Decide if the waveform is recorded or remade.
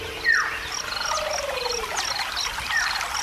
recorded